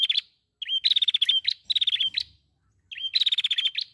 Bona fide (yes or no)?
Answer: yes